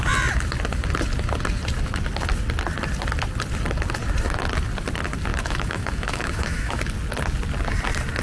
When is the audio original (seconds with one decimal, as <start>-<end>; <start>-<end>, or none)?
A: 0.0-5.3; 6.8-8.2